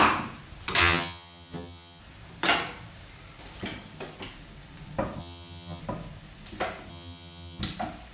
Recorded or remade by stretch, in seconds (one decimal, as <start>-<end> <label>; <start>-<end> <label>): 0.0-0.8 recorded; 0.8-2.0 remade; 2.0-5.2 recorded; 5.2-5.8 remade; 5.8-6.9 recorded; 6.9-7.6 remade; 7.6-8.1 recorded